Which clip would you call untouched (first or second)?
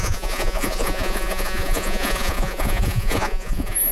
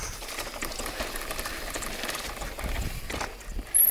second